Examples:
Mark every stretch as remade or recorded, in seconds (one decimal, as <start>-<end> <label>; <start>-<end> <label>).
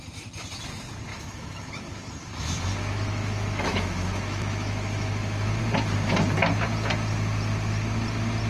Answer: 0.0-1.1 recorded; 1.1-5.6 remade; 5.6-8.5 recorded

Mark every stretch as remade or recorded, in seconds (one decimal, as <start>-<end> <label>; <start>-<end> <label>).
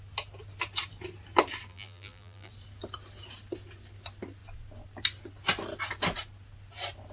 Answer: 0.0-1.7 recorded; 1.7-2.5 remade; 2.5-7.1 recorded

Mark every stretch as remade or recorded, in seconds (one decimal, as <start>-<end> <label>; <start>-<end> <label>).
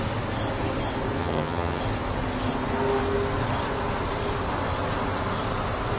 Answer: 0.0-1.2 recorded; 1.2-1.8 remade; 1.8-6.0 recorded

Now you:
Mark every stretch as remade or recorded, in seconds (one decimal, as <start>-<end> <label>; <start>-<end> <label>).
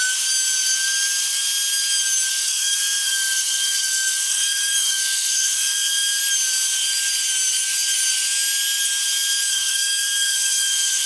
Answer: 0.0-2.3 recorded; 2.3-6.2 remade; 6.2-9.5 recorded; 9.5-11.1 remade